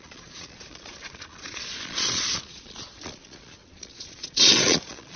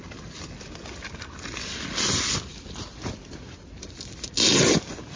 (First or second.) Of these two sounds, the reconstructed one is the first